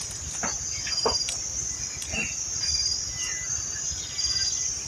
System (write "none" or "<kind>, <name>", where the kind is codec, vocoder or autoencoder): none